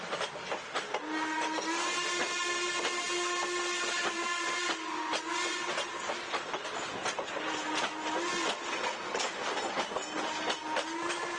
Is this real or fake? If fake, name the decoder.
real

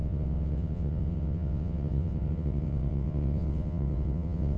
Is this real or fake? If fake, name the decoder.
fake, vocoder, WaveNeXt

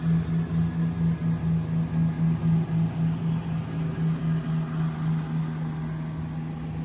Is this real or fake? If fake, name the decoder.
real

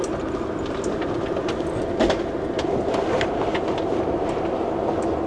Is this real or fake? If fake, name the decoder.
real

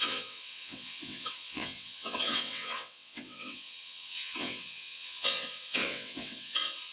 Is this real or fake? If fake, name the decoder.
fake, vocoder, WaveNeXt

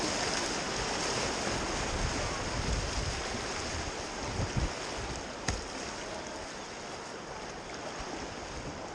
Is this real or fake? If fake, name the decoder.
real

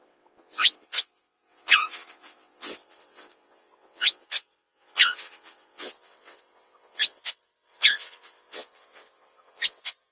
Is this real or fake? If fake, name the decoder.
fake, vocoder, WaveNeXt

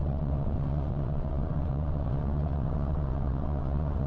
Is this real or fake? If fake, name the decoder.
fake, vocoder, WaveNeXt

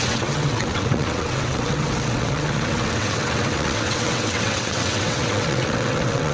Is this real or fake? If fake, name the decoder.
fake, vocoder, WaveNeXt